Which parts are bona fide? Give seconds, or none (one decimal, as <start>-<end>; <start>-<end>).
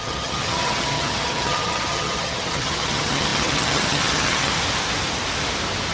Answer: 4.5-5.9